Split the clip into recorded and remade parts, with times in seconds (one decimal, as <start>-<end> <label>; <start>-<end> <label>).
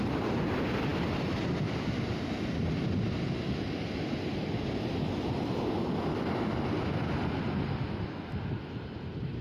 0.0-9.4 recorded